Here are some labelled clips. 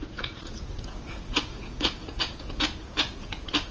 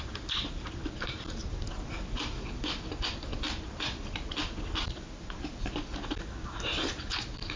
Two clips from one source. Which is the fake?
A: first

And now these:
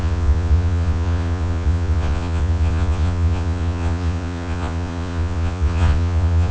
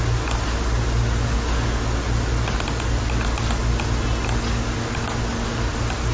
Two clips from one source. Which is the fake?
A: first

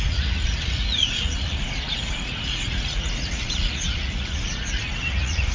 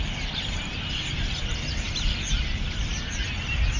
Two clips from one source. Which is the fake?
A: first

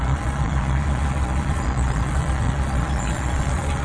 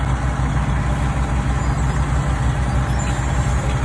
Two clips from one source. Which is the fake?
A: first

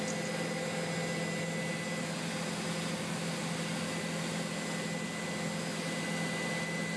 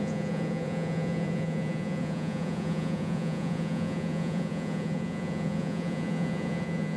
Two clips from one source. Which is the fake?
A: second